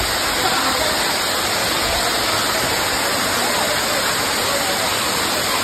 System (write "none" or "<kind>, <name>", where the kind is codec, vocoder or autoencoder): none